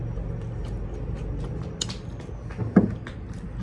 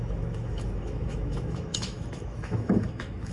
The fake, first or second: second